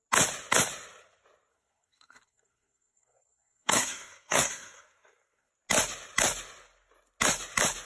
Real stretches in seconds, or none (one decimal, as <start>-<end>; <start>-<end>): 0.0-1.5; 5.5-7.9